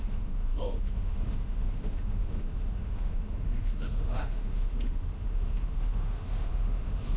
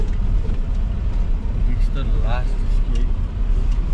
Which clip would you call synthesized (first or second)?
first